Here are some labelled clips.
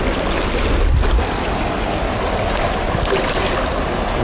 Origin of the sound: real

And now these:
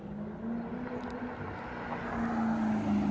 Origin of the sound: real